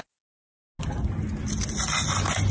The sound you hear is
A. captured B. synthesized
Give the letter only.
A